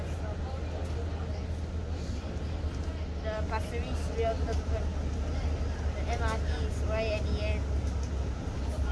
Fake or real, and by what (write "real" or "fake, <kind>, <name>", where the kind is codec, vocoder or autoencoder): real